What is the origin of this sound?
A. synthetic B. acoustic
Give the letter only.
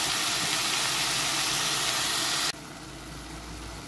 B